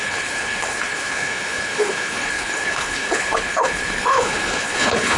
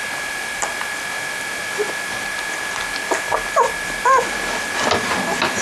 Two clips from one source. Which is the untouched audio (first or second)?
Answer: second